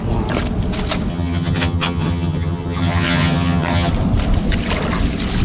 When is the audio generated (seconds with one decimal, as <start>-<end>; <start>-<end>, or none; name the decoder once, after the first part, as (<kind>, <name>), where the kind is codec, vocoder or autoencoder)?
1.1-3.9 (vocoder, HiFi-GAN)

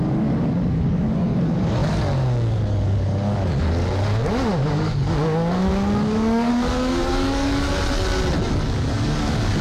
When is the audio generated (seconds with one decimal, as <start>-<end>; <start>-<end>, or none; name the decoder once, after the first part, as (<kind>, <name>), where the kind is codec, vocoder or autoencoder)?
0.0-7.7 (codec, DAC); 8.5-9.6

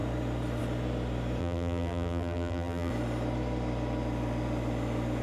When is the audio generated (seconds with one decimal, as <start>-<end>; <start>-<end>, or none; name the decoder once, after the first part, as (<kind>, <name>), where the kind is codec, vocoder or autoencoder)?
1.4-2.9 (vocoder, BigVGAN v2)

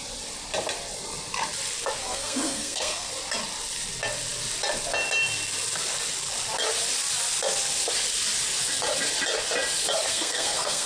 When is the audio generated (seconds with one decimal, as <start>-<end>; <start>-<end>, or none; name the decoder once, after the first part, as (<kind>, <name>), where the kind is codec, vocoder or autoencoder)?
2.0-3.1 (codec, SNAC); 10.1-10.9